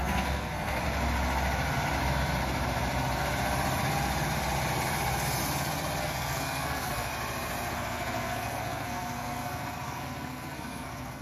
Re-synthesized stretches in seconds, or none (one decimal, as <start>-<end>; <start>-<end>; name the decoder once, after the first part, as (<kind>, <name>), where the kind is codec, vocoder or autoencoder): 0.0-0.8 (codec, SNAC); 6.0-7.1; 7.7-11.2